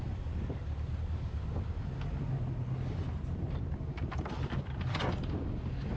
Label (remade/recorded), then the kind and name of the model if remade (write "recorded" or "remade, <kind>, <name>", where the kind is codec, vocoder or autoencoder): recorded